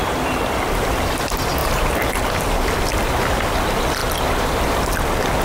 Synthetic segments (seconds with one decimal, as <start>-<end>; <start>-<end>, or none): none